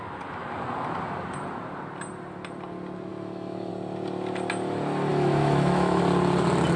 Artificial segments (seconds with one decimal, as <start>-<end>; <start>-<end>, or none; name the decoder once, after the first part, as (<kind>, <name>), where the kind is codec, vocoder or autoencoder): 3.1-3.7 (autoencoder, DAC-VAE); 5.1-6.0